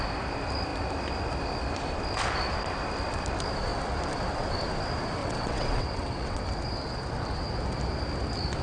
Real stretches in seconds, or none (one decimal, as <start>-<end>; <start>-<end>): 0.0-5.2; 6.4-8.6